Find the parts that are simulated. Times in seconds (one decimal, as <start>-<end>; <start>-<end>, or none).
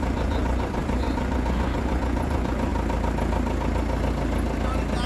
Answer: 0.0-2.7